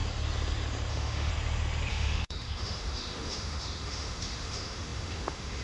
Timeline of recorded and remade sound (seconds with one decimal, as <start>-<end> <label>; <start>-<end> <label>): 0.0-0.9 recorded; 0.9-1.3 remade; 1.3-1.9 recorded; 1.9-5.6 remade

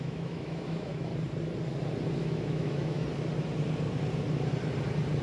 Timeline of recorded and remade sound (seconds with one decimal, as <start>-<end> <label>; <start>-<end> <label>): 0.0-1.1 remade; 1.1-2.2 recorded; 2.2-3.0 remade; 3.0-5.2 recorded

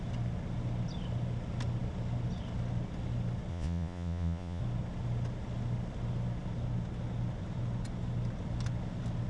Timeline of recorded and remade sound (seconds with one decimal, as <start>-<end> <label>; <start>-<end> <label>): 0.0-3.5 recorded; 3.5-4.6 remade; 4.6-9.3 recorded

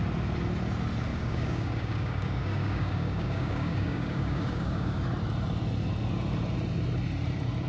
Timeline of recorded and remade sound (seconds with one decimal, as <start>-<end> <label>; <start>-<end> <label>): 0.0-1.1 recorded; 1.1-5.0 remade; 5.0-7.7 recorded

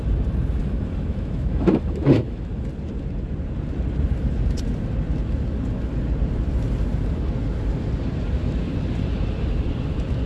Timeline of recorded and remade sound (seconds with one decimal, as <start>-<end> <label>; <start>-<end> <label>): 0.0-0.6 recorded; 0.6-2.5 remade; 2.5-10.3 recorded